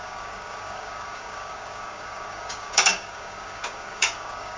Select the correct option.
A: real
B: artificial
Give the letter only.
B